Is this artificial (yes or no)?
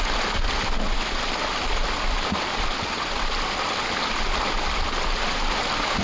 no